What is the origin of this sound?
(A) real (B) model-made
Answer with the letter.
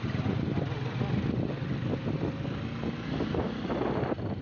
A